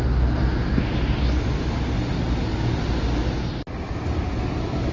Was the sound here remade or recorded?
recorded